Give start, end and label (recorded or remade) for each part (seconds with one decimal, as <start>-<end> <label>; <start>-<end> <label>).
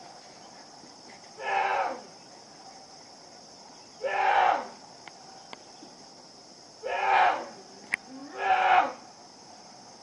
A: 0.0-10.0 recorded